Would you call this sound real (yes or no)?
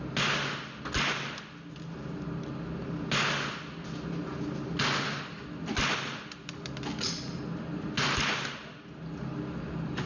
yes